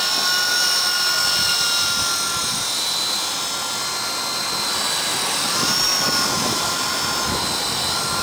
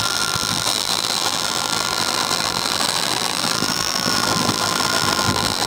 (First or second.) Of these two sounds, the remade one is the second